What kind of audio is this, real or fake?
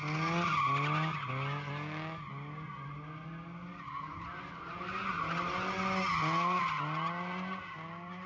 real